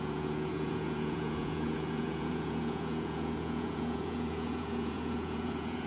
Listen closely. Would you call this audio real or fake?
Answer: fake